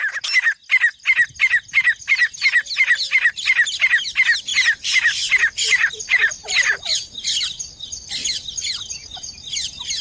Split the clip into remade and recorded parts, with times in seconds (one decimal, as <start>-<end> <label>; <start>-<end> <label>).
0.0-10.0 recorded